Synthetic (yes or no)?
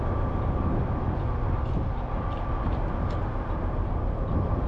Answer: no